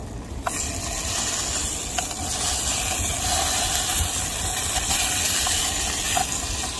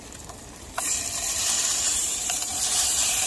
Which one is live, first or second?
first